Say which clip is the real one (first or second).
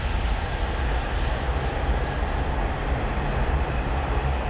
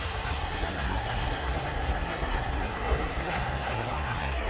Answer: first